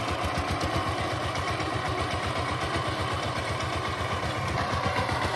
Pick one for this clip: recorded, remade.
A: recorded